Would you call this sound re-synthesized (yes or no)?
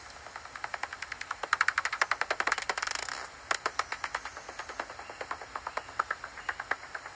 no